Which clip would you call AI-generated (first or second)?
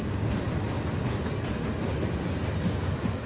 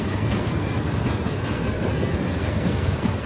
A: second